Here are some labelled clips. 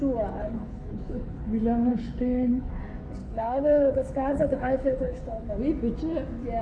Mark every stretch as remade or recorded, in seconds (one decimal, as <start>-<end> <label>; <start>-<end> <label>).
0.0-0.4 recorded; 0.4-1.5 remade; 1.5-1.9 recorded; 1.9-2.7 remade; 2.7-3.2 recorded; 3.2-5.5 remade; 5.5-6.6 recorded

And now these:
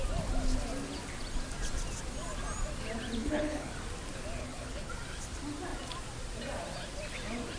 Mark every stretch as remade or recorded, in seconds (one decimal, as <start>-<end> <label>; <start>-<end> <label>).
0.0-3.2 recorded; 3.2-3.7 remade; 3.7-4.4 recorded; 4.4-4.9 remade; 4.9-7.6 recorded

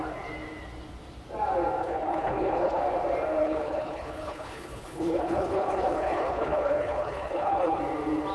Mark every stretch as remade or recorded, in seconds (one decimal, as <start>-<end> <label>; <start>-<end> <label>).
0.0-1.8 recorded; 1.8-2.8 remade; 2.8-3.4 recorded; 3.4-7.8 remade; 7.8-8.3 recorded

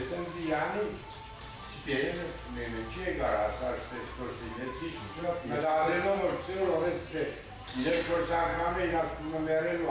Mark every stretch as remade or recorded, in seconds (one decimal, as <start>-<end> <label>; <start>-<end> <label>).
0.0-9.9 recorded

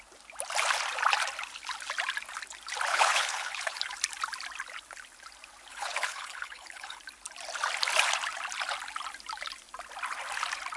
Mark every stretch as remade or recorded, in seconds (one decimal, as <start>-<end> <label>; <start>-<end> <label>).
0.0-2.9 recorded; 2.9-3.9 remade; 3.9-5.7 recorded; 5.7-7.0 remade; 7.0-10.8 recorded